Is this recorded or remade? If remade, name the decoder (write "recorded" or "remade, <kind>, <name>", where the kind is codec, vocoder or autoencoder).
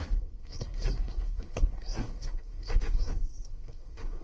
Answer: remade, codec, SNAC